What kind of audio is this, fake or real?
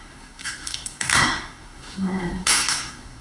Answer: fake